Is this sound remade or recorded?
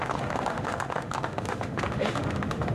remade